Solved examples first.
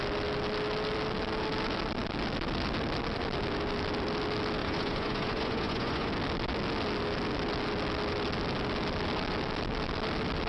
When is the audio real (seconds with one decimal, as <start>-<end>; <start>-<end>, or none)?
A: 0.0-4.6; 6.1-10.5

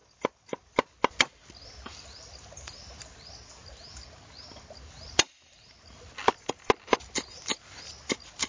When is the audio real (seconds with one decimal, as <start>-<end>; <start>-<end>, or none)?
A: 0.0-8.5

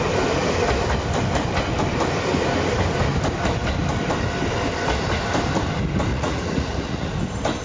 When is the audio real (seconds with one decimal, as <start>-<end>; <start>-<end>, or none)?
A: 0.0-6.1; 7.1-7.6

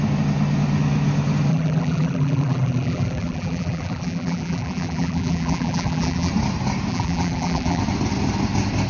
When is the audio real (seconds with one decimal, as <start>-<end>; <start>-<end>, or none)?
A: 0.0-1.5; 6.3-6.9; 7.8-8.9

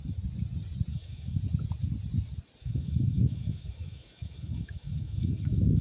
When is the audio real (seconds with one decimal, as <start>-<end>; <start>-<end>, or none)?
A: 0.0-0.9; 1.4-2.6

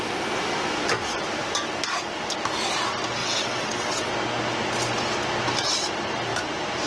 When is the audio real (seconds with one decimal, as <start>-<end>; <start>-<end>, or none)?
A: 0.0-3.2; 4.1-6.9

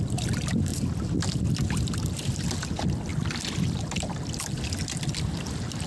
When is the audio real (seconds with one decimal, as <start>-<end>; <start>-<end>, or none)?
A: 0.0-5.9

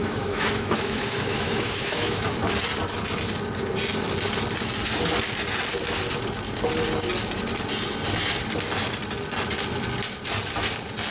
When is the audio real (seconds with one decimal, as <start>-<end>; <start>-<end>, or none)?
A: 2.3-11.1